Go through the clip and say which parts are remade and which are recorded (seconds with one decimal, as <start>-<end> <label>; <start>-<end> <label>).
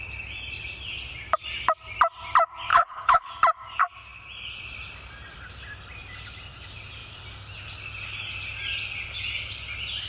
0.0-2.7 recorded; 2.7-3.3 remade; 3.3-10.1 recorded